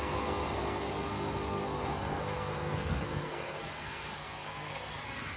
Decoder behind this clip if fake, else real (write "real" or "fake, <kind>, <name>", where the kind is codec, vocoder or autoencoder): fake, codec, SNAC